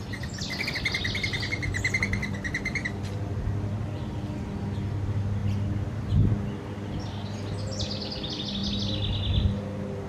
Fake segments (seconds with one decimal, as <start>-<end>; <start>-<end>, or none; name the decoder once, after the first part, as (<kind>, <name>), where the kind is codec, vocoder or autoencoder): 2.2-3.4 (vocoder, BigVGAN v2); 5.4-6.3